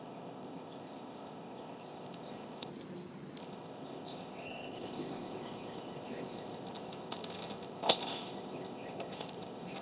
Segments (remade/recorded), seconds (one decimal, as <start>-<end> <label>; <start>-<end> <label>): 0.0-2.7 remade; 2.7-3.4 recorded; 3.4-9.8 remade